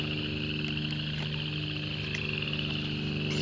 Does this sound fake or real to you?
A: real